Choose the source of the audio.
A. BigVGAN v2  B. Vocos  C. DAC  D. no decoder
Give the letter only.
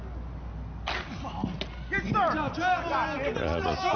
D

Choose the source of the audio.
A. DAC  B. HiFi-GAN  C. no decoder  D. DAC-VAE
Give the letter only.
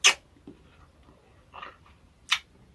C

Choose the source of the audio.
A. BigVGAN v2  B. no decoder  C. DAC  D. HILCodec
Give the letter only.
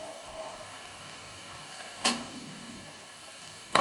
C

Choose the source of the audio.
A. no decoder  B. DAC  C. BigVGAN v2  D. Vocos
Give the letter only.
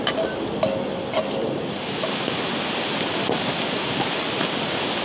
A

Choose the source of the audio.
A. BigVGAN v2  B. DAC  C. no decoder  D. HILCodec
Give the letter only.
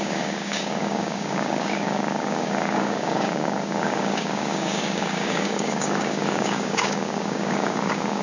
B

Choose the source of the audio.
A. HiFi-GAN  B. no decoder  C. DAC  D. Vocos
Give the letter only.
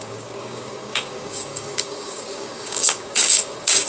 C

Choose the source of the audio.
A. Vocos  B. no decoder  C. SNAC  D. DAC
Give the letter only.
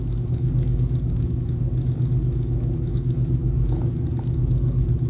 D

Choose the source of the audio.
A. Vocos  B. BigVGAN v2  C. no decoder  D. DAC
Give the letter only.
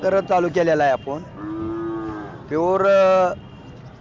C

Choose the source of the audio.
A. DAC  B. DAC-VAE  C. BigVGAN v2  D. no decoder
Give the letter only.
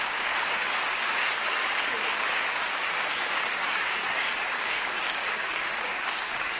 A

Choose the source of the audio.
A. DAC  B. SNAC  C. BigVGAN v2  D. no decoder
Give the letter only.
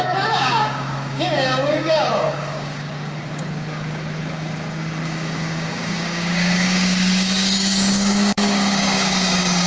A